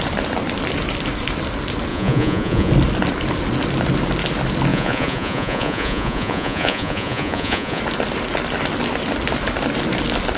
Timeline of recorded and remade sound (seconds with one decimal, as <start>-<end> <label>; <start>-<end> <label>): 0.0-1.9 recorded; 1.9-2.7 remade; 2.7-4.7 recorded; 4.7-7.8 remade; 7.8-10.4 recorded